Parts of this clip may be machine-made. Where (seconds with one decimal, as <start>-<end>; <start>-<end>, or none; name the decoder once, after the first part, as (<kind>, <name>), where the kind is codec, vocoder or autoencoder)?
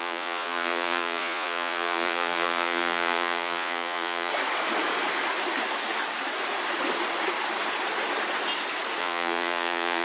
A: 0.0-4.3 (vocoder, Vocos); 9.0-10.0